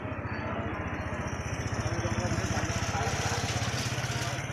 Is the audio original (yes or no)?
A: yes